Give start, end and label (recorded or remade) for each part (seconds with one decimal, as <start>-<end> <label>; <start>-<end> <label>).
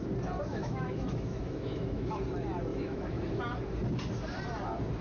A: 0.0-0.5 recorded; 0.5-2.1 remade; 2.1-2.7 recorded; 2.7-3.4 remade; 3.4-5.0 recorded